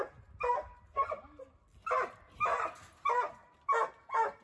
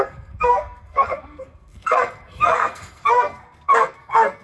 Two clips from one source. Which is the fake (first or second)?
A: second